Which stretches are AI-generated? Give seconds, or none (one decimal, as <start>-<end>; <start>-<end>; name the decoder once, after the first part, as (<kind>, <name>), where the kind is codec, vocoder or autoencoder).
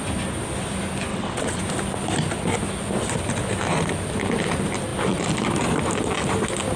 1.1-1.6 (vocoder, WaveNeXt)